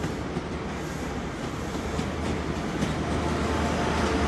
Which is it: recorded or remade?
recorded